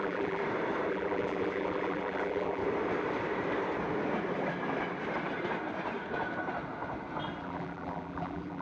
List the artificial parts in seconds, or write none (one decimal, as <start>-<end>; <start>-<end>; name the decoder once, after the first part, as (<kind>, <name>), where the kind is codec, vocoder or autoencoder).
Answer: 0.0-0.4 (vocoder, BigVGAN v2); 0.9-2.6; 7.4-8.6